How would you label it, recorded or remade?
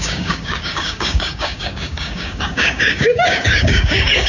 remade